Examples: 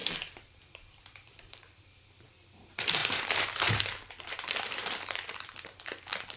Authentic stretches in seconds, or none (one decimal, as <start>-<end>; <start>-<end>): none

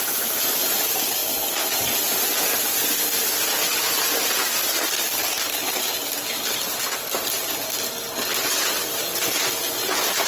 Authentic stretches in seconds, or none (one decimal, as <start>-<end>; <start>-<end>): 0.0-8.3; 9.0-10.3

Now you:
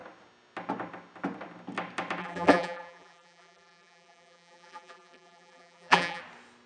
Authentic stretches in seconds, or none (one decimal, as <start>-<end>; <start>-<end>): 0.0-2.2; 6.2-6.7

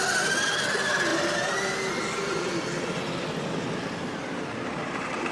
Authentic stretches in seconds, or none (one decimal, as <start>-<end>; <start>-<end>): 0.0-5.3

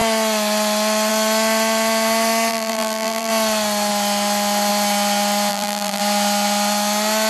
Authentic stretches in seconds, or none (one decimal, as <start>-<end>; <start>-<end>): 0.0-2.5; 3.3-5.5; 6.0-7.3

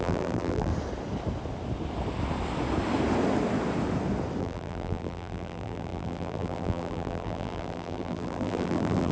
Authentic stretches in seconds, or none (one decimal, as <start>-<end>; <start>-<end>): 0.7-4.4

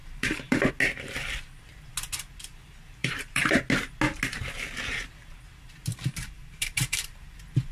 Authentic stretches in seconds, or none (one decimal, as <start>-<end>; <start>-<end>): 0.7-3.0; 3.6-5.9; 7.2-7.7